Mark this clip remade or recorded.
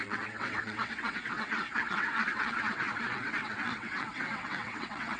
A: remade